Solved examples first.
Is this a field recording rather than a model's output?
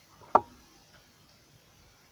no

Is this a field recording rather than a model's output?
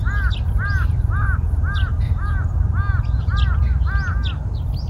yes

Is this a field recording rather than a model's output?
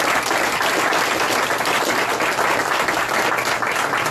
yes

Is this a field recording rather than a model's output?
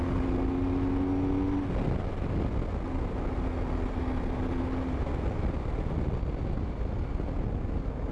yes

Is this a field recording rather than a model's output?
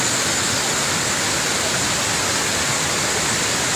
yes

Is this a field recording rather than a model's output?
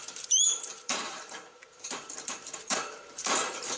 no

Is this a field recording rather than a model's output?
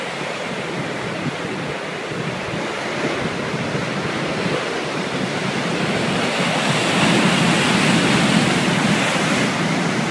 yes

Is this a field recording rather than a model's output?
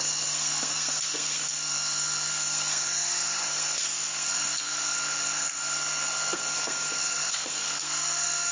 no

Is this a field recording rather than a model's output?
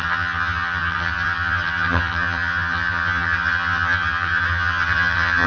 no